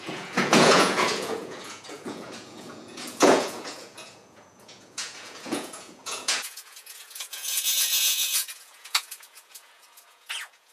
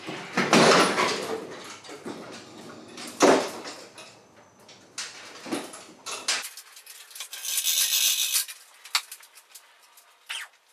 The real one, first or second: second